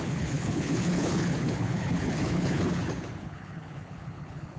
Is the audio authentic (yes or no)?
no